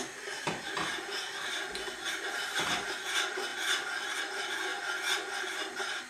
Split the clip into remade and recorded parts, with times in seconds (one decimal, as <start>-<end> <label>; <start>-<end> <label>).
0.0-3.5 remade; 3.5-4.2 recorded; 4.2-4.7 remade; 4.7-5.5 recorded; 5.5-6.1 remade